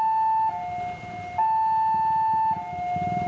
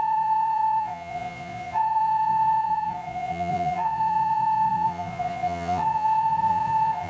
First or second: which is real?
first